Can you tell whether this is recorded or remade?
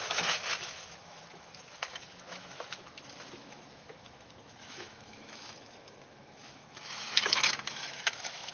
remade